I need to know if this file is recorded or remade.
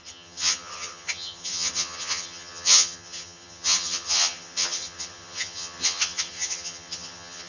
remade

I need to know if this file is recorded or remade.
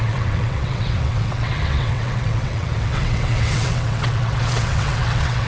remade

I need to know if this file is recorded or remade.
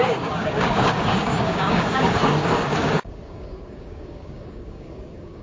remade